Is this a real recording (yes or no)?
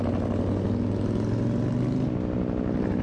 yes